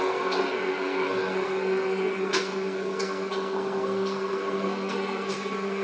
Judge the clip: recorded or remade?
remade